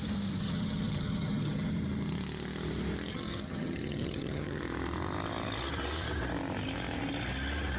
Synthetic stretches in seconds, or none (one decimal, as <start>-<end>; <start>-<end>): 0.4-1.7; 3.1-4.6